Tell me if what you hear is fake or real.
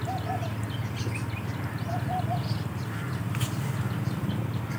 real